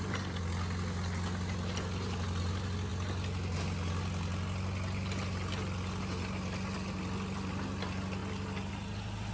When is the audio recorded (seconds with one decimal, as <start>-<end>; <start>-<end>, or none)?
0.0-9.3